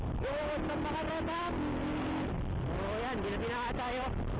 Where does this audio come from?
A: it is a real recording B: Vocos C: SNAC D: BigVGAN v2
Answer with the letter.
A